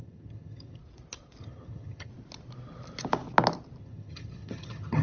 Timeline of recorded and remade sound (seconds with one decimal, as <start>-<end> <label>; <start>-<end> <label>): 0.0-0.8 remade; 0.8-1.4 recorded; 1.4-2.1 remade; 2.1-3.8 recorded; 3.8-5.0 remade